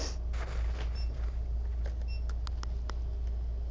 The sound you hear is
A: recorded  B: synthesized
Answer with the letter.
A